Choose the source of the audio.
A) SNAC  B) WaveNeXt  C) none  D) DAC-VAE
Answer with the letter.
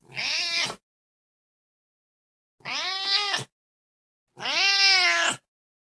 C